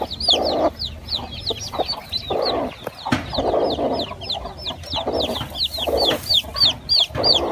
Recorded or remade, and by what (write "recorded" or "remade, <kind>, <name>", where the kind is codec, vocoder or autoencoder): recorded